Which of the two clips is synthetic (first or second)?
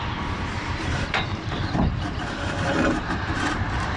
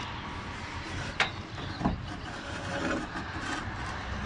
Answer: first